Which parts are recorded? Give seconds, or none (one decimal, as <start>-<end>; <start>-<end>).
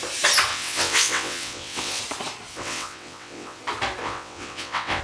0.0-0.5; 2.0-2.5; 3.6-4.0